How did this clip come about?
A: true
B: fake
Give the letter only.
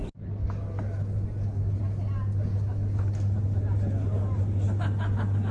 A